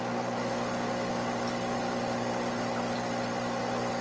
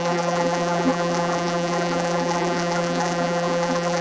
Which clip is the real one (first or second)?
first